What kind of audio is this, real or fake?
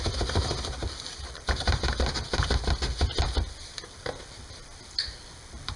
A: fake